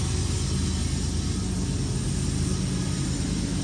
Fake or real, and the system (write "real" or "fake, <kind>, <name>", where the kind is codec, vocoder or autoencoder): real